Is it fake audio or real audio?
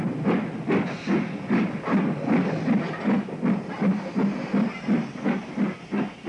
real